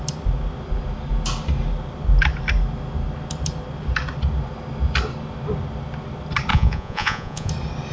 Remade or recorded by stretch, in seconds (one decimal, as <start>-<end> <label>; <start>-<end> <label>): 0.0-6.5 recorded; 6.5-7.5 remade; 7.5-7.9 recorded